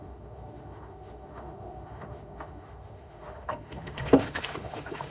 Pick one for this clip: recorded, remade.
remade